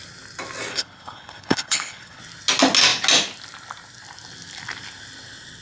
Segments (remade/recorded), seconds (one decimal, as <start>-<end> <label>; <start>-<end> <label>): 0.0-0.7 recorded; 0.7-2.2 remade; 2.2-5.6 recorded